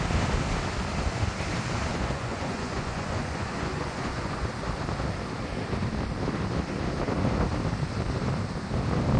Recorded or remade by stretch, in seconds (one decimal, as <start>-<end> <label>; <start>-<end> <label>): 0.0-1.9 recorded; 1.9-4.5 remade; 4.5-9.2 recorded